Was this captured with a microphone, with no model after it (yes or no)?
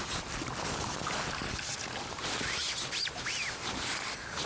yes